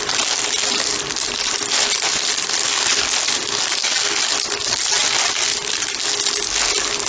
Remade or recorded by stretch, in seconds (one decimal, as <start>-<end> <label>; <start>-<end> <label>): 0.0-7.1 recorded